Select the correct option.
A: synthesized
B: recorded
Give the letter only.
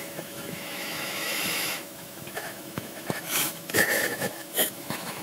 A